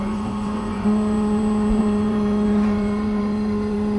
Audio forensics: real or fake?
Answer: fake